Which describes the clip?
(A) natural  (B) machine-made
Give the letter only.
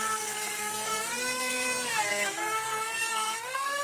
B